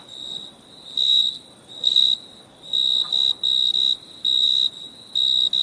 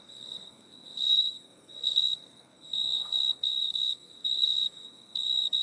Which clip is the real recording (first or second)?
first